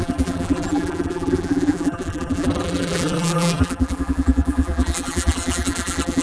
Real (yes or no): no